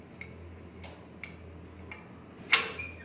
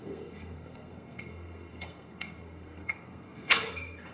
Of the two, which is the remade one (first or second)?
second